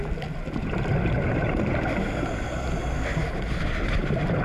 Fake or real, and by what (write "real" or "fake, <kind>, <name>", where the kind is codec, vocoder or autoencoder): real